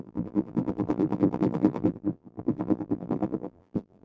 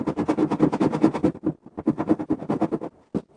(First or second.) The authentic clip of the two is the second